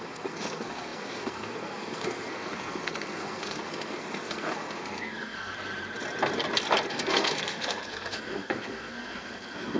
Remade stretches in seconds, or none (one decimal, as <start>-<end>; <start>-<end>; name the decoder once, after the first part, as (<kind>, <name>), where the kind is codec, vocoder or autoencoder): 0.0-5.5 (codec, SNAC); 6.9-9.8